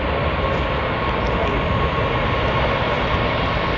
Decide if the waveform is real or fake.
real